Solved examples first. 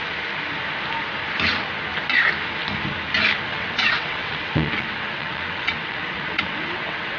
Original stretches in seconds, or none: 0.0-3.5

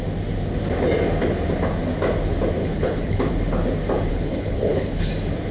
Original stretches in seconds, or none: 0.0-2.6; 3.3-4.1; 5.1-5.5

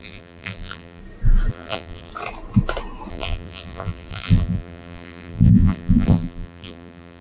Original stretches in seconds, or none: 1.0-1.5; 2.1-3.1

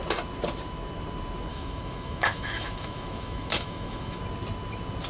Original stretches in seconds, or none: 0.0-1.5; 4.2-5.1

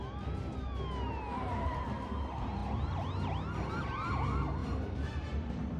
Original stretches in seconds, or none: 0.0-4.6

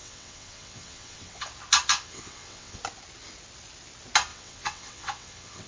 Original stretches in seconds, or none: 1.5-1.9; 2.8-4.3